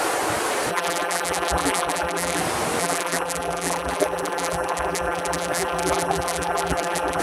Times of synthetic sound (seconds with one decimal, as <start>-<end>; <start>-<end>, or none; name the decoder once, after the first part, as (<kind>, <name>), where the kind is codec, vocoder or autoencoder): 0.7-2.4 (vocoder, BigVGAN v2); 2.8-7.2